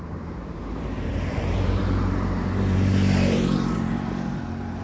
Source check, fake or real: fake